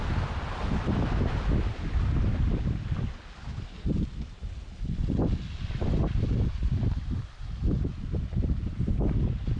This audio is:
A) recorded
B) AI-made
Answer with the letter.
A